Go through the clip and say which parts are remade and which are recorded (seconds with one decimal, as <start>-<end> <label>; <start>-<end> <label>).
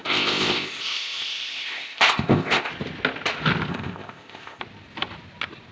0.0-2.7 remade; 2.7-3.7 recorded; 3.7-4.6 remade; 4.6-5.7 recorded